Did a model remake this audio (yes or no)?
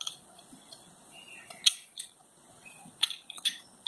yes